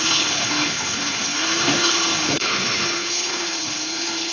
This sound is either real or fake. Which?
fake